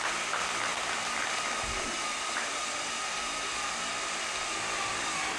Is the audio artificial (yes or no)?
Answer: no